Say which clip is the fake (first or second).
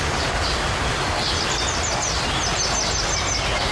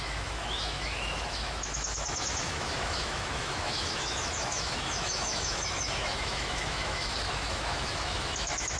second